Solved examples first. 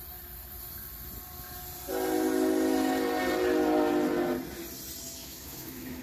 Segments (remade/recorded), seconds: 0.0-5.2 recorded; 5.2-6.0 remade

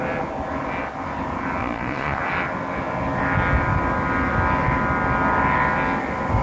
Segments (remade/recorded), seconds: 0.0-1.6 recorded; 1.6-2.2 remade; 2.2-6.4 recorded

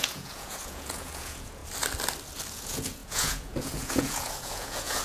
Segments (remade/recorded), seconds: 0.0-1.6 remade; 1.6-2.5 recorded; 2.5-5.0 remade

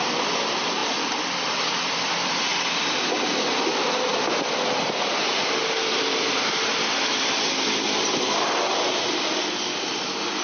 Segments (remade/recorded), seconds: 0.0-10.4 recorded

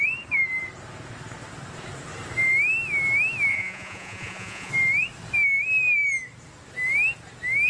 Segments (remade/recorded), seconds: 0.0-3.5 recorded; 3.5-4.7 remade; 4.7-7.7 recorded

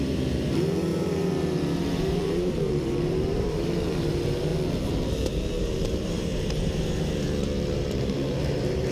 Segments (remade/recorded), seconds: 0.0-4.5 remade; 4.5-5.6 recorded; 5.6-8.9 remade

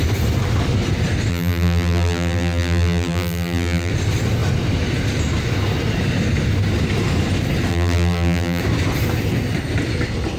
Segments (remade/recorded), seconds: 0.0-1.3 recorded; 1.3-3.9 remade; 3.9-7.7 recorded; 7.7-8.6 remade; 8.6-10.4 recorded